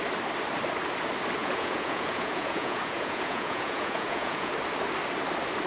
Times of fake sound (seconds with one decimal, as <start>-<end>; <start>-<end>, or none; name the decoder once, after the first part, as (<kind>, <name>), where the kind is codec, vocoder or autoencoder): 1.4-4.5 (vocoder, Vocos)